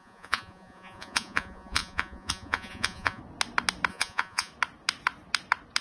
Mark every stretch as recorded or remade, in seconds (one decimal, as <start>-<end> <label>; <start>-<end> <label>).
0.0-3.2 remade; 3.2-3.9 recorded; 3.9-4.5 remade; 4.5-5.8 recorded